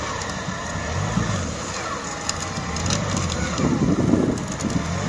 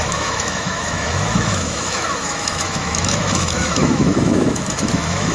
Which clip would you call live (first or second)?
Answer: first